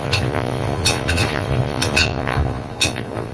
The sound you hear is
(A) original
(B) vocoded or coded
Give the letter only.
B